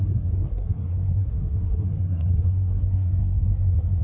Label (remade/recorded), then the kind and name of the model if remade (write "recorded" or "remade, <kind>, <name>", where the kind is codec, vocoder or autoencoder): remade, codec, SNAC